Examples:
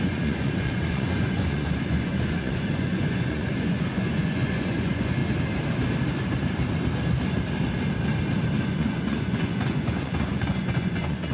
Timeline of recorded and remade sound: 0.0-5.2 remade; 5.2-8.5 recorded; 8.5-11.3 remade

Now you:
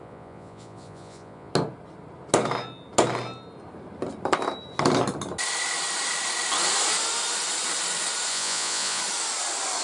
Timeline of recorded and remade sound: 0.0-1.5 remade; 1.5-8.3 recorded; 8.3-9.0 remade; 9.0-9.8 recorded

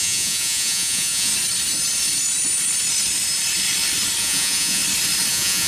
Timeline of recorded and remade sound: 0.0-1.3 remade; 1.3-4.2 recorded; 4.2-4.8 remade; 4.8-5.3 recorded; 5.3-5.7 remade